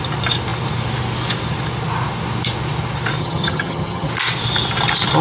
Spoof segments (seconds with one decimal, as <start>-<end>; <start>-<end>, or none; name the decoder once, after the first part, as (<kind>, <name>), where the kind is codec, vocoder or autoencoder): 3.2-4.1 (vocoder, HiFi-GAN)